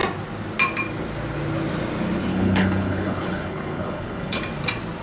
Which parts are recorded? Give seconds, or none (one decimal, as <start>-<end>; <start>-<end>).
0.0-2.3; 4.4-5.0